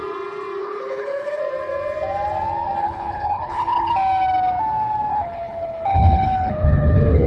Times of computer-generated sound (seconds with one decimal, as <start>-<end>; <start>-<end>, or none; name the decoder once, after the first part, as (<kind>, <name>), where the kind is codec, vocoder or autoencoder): 0.6-1.4 (codec, HILCodec); 2.8-3.9; 5.1-7.3